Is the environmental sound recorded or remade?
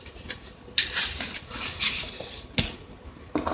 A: recorded